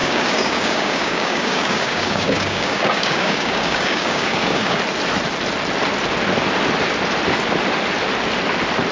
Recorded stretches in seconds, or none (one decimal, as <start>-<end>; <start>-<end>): 4.8-8.9